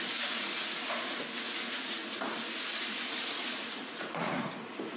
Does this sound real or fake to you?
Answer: fake